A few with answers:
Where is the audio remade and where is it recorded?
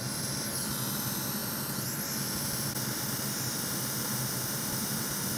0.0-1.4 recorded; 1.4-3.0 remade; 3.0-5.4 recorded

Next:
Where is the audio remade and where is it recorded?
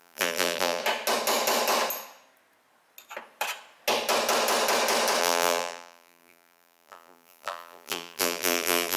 0.0-0.8 remade; 0.8-5.2 recorded; 5.2-9.0 remade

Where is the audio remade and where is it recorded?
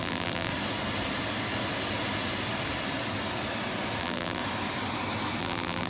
0.0-0.5 remade; 0.5-4.0 recorded; 4.0-4.4 remade; 4.4-5.4 recorded; 5.4-5.9 remade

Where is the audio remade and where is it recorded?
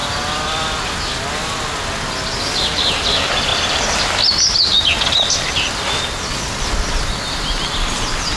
0.0-1.2 remade; 1.2-8.4 recorded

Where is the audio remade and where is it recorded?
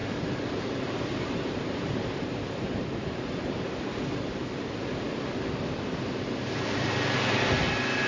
0.0-3.7 remade; 3.7-8.1 recorded